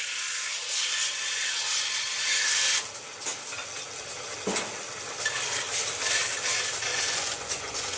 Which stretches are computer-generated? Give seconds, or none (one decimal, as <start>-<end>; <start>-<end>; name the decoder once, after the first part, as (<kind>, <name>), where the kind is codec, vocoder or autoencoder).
6.9-8.0 (vocoder, Vocos)